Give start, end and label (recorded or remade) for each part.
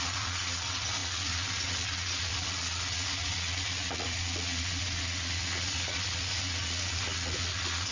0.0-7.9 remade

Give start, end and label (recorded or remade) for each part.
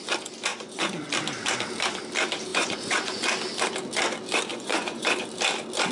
0.0-0.5 recorded; 0.5-1.0 remade; 1.0-2.5 recorded; 2.5-3.2 remade; 3.2-4.5 recorded; 4.5-5.2 remade; 5.2-5.9 recorded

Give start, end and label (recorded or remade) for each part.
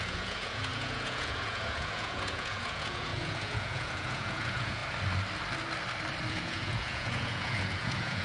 0.0-4.8 remade; 4.8-6.3 recorded; 6.3-8.2 remade